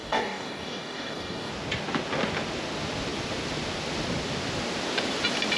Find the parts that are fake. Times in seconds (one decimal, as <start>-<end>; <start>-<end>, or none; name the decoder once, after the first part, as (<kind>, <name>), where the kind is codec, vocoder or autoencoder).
0.0-1.5 (codec, DAC)